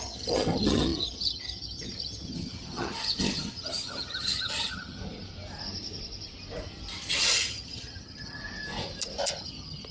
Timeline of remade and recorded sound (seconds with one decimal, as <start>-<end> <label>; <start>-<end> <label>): 0.0-5.0 remade; 5.0-7.1 recorded; 7.1-8.4 remade; 8.4-9.4 recorded; 9.4-9.9 remade

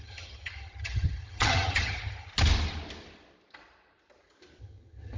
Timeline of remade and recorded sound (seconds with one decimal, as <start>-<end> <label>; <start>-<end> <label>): 0.0-2.3 remade; 2.3-4.6 recorded; 4.6-5.2 remade

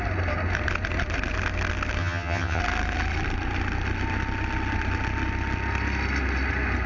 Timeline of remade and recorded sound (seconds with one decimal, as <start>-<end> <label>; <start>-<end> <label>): 0.0-2.0 recorded; 2.0-2.6 remade; 2.6-6.9 recorded

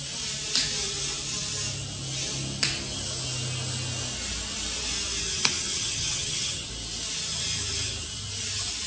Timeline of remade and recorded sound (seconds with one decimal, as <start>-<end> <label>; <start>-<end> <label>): 0.0-5.6 recorded; 5.6-6.7 remade; 6.7-8.9 recorded

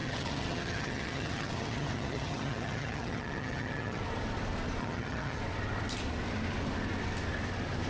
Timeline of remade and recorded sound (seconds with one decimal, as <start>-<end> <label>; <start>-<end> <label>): 0.0-4.0 remade; 4.0-4.8 recorded; 4.8-5.4 remade; 5.4-7.9 recorded

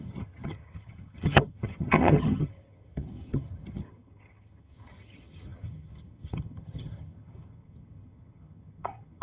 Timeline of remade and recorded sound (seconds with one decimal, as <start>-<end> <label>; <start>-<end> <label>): 0.0-9.2 remade